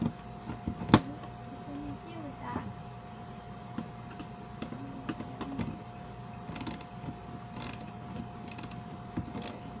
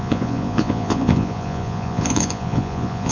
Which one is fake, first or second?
second